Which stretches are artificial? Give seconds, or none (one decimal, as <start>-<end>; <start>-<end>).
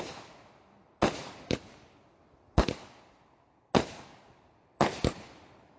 none